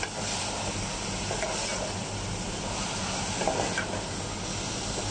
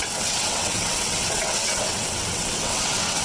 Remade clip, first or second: second